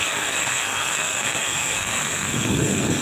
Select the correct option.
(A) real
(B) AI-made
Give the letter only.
B